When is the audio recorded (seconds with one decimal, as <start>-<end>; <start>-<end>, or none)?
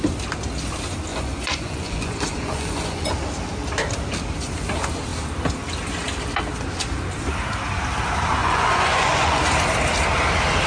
0.0-1.1; 3.1-8.4; 9.4-10.7